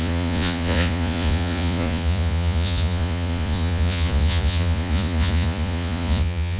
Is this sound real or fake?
fake